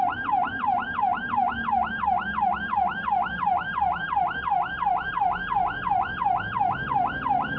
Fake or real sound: real